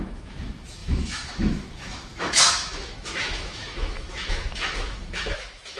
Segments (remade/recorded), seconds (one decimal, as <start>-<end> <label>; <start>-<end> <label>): 0.0-5.8 remade